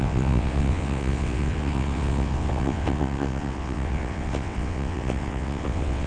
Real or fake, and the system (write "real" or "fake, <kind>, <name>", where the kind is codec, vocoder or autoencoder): fake, vocoder, WaveNeXt